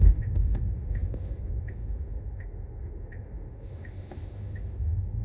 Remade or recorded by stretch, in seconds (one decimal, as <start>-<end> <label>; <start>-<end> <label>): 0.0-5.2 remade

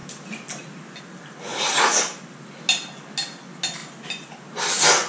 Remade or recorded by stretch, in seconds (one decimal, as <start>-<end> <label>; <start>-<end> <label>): 0.0-1.5 recorded; 1.5-2.0 remade; 2.0-5.1 recorded

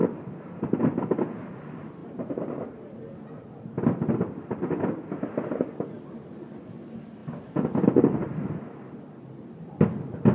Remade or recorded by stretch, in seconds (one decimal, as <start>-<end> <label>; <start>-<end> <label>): 0.0-10.3 recorded

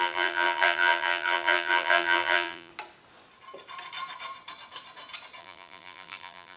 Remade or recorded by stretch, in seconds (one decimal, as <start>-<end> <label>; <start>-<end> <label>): 0.0-2.7 remade; 2.7-5.4 recorded; 5.4-6.6 remade

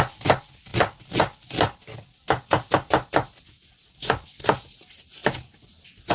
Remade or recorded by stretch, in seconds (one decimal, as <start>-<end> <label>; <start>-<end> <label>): 0.0-6.1 recorded

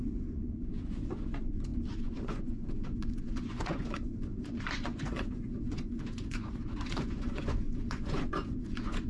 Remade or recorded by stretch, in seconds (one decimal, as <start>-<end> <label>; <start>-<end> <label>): 0.0-9.1 remade

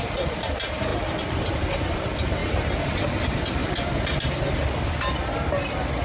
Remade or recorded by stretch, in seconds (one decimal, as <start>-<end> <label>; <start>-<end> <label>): 0.0-3.6 recorded; 3.6-5.1 remade; 5.1-6.0 recorded